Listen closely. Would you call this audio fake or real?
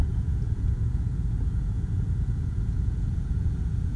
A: fake